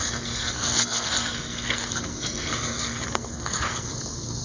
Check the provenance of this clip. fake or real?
fake